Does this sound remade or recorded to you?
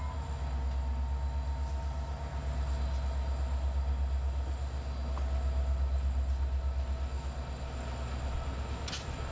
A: recorded